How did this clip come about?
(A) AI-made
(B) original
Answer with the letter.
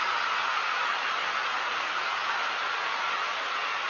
B